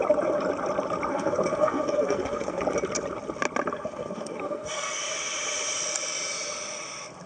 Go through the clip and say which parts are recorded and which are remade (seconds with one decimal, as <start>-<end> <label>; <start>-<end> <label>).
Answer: 0.0-1.1 recorded; 1.1-2.6 remade; 2.6-3.7 recorded; 3.7-5.0 remade; 5.0-7.3 recorded